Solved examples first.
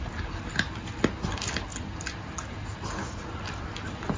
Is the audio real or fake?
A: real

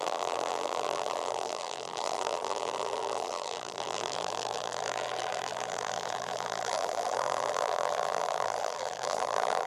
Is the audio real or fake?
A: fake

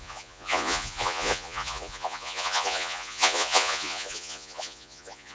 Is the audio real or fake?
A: fake